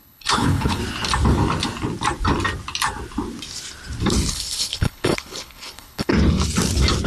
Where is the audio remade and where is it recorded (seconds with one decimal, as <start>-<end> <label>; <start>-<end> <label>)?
0.0-0.8 remade; 0.8-4.3 recorded; 4.3-6.1 remade; 6.1-7.1 recorded